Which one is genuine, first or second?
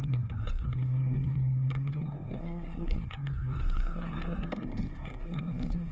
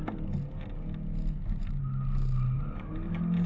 second